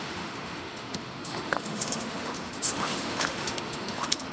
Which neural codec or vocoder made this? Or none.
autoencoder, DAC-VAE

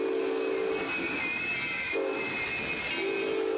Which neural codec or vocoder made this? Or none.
none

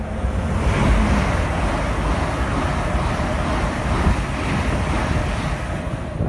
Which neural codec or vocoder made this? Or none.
none